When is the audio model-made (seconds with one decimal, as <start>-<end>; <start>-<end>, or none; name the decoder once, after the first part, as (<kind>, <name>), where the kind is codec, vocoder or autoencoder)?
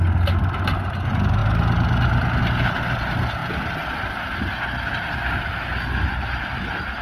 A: none